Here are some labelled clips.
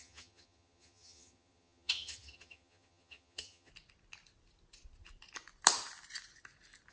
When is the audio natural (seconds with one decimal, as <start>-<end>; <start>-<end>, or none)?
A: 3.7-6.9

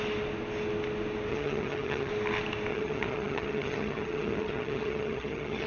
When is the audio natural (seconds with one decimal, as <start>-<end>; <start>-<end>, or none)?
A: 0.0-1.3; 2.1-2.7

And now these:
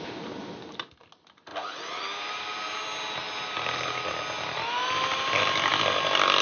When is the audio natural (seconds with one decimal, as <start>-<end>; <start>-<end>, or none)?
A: 0.0-6.4

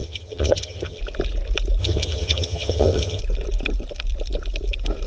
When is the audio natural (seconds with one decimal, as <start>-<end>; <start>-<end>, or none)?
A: 1.0-1.8; 3.2-5.1

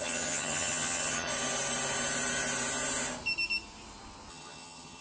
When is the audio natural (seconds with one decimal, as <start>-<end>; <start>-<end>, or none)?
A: 1.3-4.3

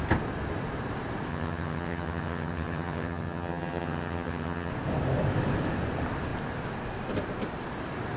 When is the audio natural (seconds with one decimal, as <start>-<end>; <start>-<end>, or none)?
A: 0.0-1.3; 4.7-8.2

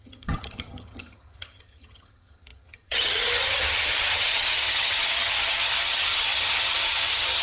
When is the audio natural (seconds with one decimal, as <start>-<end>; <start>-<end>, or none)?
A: none

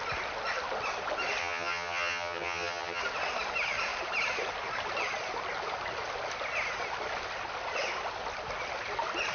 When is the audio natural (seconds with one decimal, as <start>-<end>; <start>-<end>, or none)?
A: 0.0-1.4; 3.0-9.3